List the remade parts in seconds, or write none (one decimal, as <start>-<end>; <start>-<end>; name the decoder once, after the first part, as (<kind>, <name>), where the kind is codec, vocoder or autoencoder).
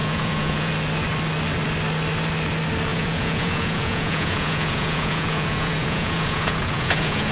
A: 0.0-0.7 (vocoder, Vocos); 2.9-7.3